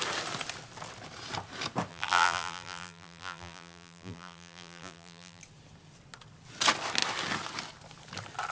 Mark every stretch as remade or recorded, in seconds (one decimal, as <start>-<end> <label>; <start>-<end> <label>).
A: 0.0-1.9 recorded; 1.9-5.4 remade; 5.4-8.5 recorded